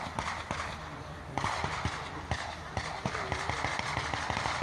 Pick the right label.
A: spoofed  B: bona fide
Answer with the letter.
A